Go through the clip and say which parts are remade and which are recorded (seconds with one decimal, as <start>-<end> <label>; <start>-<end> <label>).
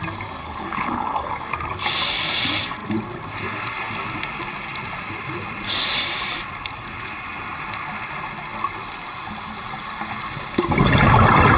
0.0-0.4 recorded; 0.4-1.3 remade; 1.3-11.6 recorded